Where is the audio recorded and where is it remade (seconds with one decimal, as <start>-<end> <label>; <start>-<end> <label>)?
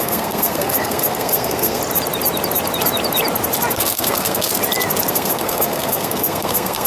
0.0-1.8 remade; 1.8-3.7 recorded; 3.7-4.5 remade; 4.5-5.1 recorded; 5.1-6.9 remade